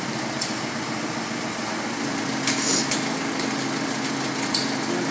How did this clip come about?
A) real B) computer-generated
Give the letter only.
A